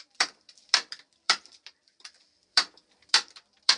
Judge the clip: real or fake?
fake